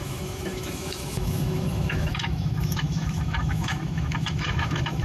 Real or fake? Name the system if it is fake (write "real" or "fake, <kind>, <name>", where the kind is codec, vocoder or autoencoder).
fake, autoencoder, DAC-VAE